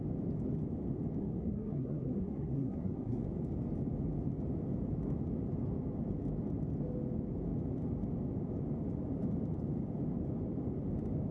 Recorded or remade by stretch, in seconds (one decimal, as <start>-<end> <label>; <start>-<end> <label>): 0.0-1.2 recorded; 1.2-3.2 remade; 3.2-11.3 recorded

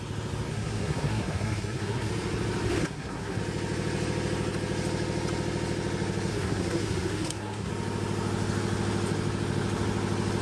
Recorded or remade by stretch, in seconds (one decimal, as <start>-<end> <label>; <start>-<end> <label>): 0.0-0.5 recorded; 0.5-2.1 remade; 2.1-2.8 recorded; 2.8-3.4 remade; 3.4-6.3 recorded; 6.3-7.7 remade; 7.7-10.4 recorded

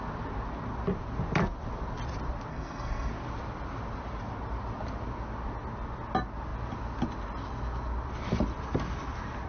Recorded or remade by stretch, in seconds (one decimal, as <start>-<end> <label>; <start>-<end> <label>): 0.0-2.5 recorded; 2.5-3.1 remade; 3.1-9.5 recorded

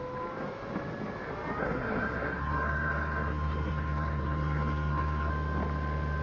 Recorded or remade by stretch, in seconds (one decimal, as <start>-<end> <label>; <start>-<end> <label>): 0.0-1.6 recorded; 1.6-5.3 remade; 5.3-6.2 recorded

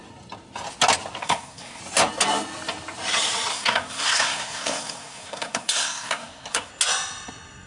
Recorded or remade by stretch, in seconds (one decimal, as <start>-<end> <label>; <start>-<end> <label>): 0.0-1.2 recorded; 1.2-1.8 remade; 1.8-3.5 recorded; 3.5-6.7 remade; 6.7-7.7 recorded

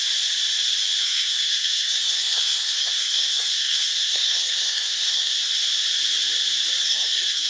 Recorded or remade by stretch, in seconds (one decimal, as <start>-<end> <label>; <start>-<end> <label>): 0.0-1.0 recorded; 1.0-5.5 remade; 5.5-6.8 recorded; 6.8-7.5 remade

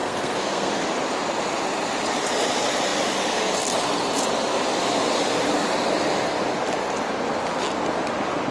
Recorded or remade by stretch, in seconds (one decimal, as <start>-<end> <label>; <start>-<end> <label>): 0.0-0.7 remade; 0.7-8.5 recorded